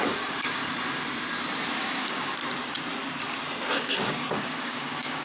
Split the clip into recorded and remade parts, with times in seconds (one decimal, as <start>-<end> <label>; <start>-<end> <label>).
0.0-0.6 remade; 0.6-1.8 recorded; 1.8-2.4 remade; 2.4-3.7 recorded; 3.7-5.2 remade